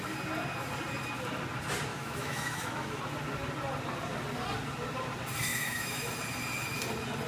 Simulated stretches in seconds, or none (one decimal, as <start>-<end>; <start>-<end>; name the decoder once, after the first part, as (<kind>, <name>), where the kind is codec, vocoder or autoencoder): 1.9-3.0 (autoencoder, DAC-VAE); 5.5-6.1